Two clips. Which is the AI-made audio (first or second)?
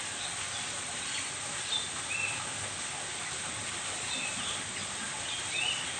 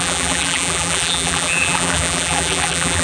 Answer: second